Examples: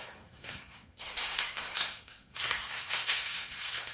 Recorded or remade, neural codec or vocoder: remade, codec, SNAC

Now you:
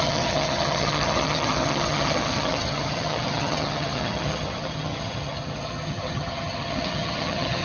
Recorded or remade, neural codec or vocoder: remade, vocoder, HiFi-GAN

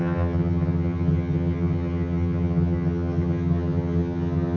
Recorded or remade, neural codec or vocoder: remade, vocoder, HiFi-GAN